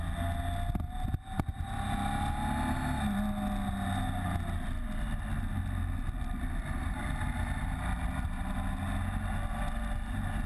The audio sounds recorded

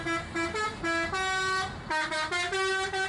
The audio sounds recorded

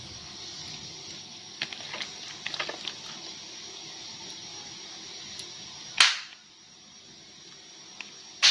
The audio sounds recorded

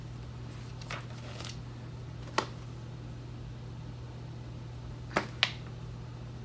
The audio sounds recorded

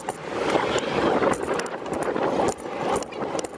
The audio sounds recorded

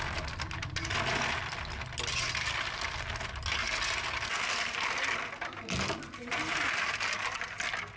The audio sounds recorded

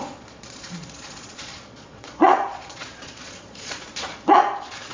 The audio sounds remade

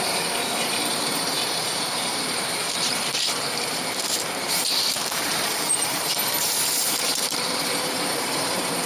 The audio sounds remade